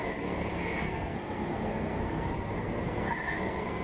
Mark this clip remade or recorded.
remade